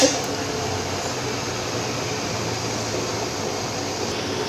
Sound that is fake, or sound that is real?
real